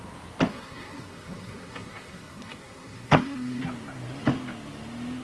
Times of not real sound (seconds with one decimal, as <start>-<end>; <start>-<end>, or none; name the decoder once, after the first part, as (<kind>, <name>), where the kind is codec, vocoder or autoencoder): 0.5-3.6 (codec, SNAC)